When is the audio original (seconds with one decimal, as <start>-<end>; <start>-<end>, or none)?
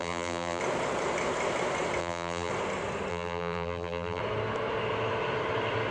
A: 0.6-2.0; 2.5-3.1; 4.2-5.9